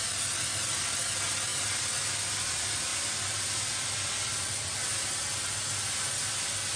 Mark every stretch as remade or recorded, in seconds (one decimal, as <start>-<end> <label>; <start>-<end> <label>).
0.0-6.8 recorded